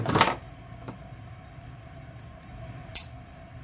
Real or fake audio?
fake